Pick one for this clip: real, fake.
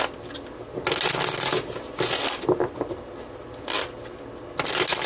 real